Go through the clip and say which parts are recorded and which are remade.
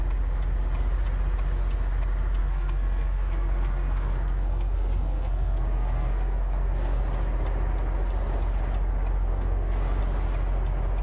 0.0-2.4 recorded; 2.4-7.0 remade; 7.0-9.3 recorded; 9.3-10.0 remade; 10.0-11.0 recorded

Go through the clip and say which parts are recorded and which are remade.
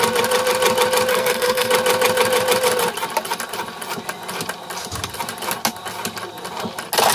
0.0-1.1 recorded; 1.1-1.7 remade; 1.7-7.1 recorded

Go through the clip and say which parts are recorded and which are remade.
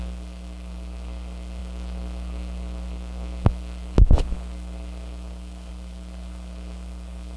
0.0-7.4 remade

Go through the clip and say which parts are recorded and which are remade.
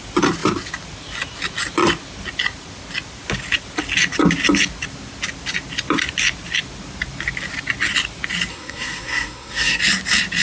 0.0-8.5 recorded; 8.5-9.8 remade; 9.8-10.4 recorded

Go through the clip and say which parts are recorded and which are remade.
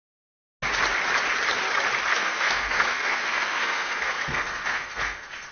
0.0-2.1 recorded; 2.1-5.5 remade